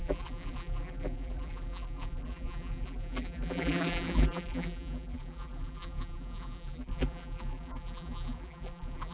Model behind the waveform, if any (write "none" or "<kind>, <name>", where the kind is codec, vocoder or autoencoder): vocoder, BigVGAN v2